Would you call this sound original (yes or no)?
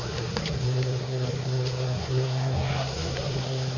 no